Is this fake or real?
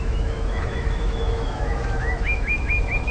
fake